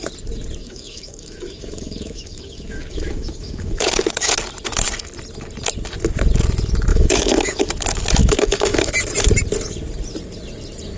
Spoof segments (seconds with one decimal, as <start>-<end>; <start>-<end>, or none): 0.6-4.3; 6.9-7.7; 8.2-8.9